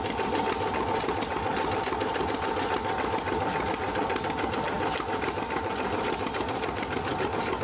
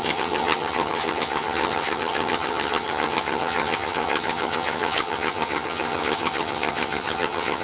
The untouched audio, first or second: first